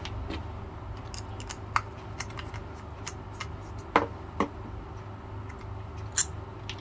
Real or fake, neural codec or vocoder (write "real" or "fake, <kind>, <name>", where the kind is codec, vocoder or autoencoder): real